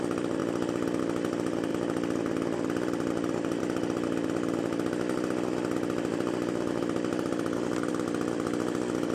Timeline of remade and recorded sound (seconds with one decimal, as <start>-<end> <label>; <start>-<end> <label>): 0.0-1.7 recorded; 1.7-3.6 remade; 3.6-6.1 recorded; 6.1-7.9 remade; 7.9-9.1 recorded